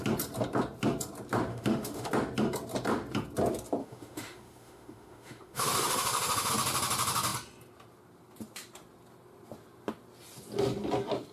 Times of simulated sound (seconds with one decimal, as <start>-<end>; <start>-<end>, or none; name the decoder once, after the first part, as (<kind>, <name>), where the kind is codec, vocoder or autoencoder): 1.5-2.1 (autoencoder, DAC-VAE); 3.8-6.5